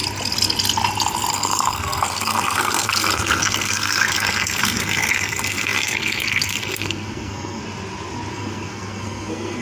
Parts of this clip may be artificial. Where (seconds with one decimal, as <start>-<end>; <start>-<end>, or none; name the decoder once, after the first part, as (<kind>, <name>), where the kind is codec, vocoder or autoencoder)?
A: 1.3-7.6 (codec, SNAC); 8.3-9.6